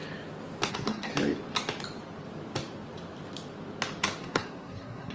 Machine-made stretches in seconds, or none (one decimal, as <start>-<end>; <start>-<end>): 0.7-1.1; 4.2-5.1